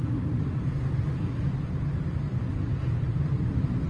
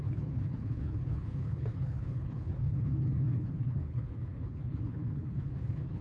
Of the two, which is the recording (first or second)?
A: first